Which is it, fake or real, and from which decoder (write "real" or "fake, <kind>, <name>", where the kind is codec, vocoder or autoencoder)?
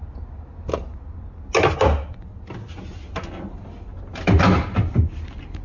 real